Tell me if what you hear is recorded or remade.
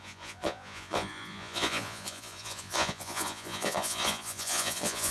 remade